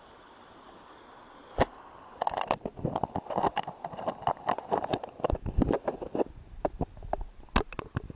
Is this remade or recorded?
recorded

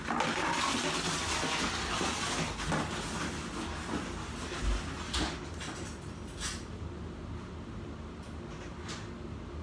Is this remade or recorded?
recorded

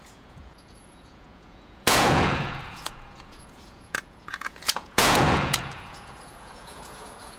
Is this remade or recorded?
remade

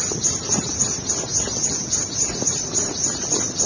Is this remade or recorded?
recorded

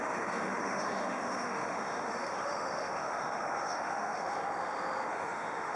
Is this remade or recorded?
remade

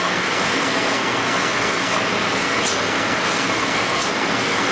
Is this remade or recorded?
remade